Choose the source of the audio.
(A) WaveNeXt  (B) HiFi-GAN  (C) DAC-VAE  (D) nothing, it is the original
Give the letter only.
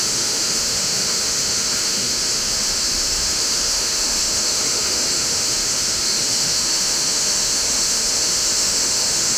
C